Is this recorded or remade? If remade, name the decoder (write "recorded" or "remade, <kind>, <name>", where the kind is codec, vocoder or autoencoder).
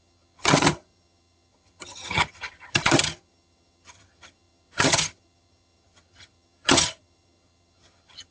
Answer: remade, vocoder, HiFi-GAN